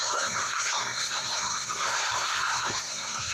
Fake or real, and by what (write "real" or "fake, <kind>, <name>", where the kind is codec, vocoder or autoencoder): fake, codec, SNAC